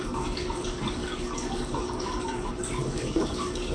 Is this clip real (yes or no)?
no